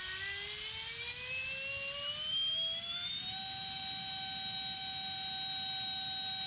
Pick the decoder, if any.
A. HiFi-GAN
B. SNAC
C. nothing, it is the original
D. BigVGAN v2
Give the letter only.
C